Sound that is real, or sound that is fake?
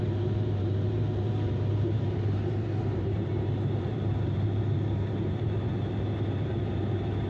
fake